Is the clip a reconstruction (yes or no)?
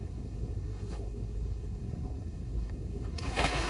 yes